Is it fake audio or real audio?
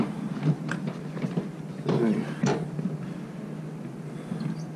real